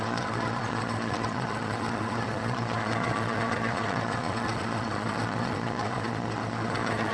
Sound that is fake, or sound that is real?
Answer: fake